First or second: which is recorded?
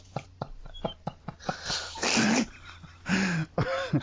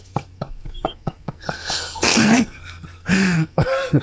first